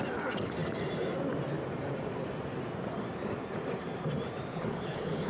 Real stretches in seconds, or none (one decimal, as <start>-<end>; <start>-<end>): 0.0-4.5